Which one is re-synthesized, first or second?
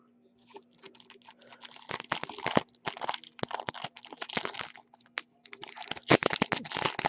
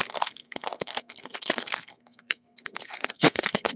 second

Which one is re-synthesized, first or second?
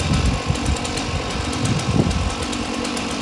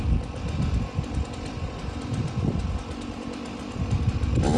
first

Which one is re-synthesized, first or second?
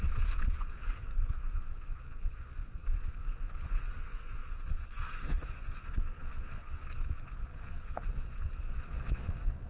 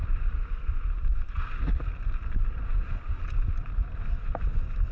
first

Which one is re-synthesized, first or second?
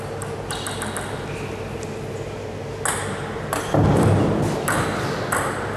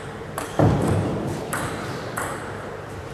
second